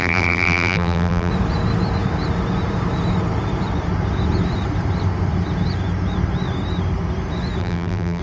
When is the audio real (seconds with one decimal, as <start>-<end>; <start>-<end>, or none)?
1.3-7.6